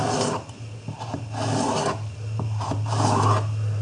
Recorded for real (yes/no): yes